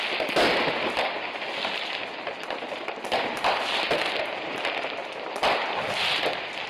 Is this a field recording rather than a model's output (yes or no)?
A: yes